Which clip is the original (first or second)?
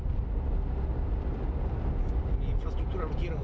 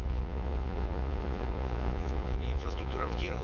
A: first